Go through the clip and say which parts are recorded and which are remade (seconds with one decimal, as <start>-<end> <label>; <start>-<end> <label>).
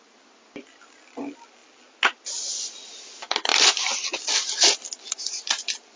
0.0-6.0 recorded